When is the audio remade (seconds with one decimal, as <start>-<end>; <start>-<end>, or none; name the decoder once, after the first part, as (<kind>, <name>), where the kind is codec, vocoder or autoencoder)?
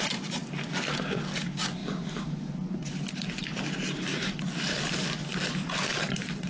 0.0-0.4 (vocoder, BigVGAN v2); 1.4-1.8; 5.7-6.5